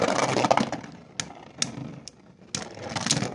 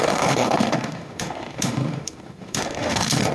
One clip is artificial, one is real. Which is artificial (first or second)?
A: second